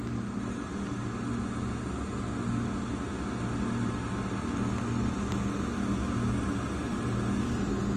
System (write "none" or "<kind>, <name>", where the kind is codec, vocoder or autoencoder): none